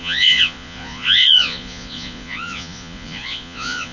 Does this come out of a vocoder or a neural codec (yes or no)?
yes